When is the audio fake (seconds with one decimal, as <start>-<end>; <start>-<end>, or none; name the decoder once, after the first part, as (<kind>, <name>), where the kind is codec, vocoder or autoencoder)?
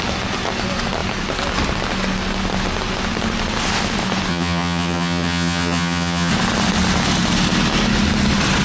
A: 4.3-6.3 (vocoder, HiFi-GAN)